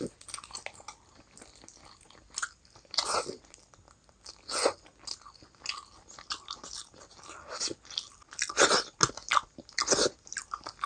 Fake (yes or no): no